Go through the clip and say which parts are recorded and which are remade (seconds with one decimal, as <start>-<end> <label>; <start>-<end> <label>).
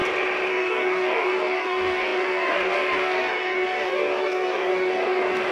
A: 0.0-0.5 recorded; 0.5-5.5 remade